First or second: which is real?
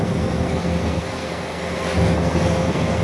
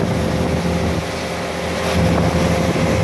second